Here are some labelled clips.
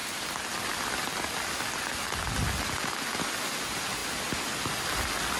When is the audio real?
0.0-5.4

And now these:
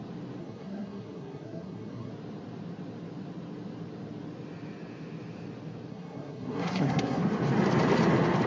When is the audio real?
0.0-0.4; 2.1-5.9; 7.2-8.5

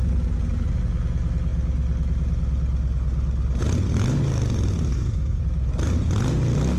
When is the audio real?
0.0-4.9; 5.4-6.8